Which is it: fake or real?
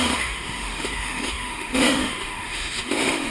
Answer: fake